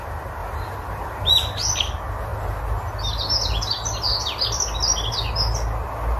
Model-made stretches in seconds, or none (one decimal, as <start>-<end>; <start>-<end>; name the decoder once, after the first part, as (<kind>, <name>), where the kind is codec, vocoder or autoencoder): none